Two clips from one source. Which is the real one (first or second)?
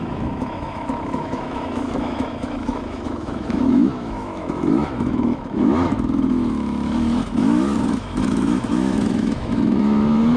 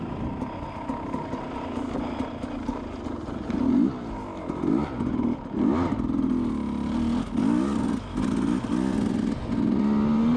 second